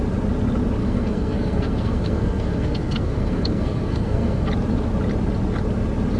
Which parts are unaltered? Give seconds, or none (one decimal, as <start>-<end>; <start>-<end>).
0.0-0.8; 4.5-6.2

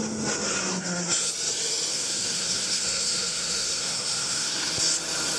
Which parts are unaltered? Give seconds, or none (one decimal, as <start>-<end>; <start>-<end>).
0.0-0.7; 1.3-1.9; 4.7-5.4

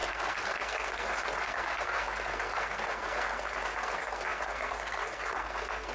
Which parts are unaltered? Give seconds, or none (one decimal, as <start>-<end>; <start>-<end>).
none

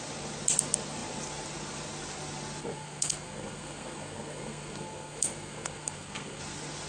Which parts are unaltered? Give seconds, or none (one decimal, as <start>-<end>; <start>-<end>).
0.0-2.6; 6.4-6.9

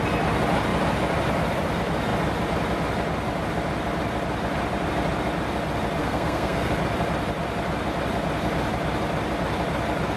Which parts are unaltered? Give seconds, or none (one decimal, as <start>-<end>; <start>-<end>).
0.0-6.0; 6.7-10.2

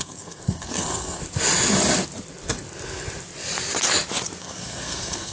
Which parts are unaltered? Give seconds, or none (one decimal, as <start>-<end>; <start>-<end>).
1.2-4.4

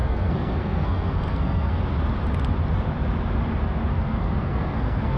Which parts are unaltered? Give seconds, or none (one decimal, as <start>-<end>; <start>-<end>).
1.8-3.9